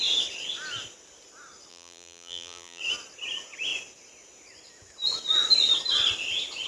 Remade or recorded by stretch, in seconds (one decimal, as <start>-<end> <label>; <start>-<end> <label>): 0.0-1.7 recorded; 1.7-2.8 remade; 2.8-6.7 recorded